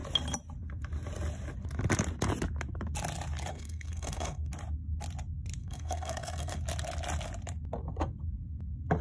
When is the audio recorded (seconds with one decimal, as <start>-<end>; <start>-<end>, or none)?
0.0-3.5; 4.5-5.6; 6.6-9.0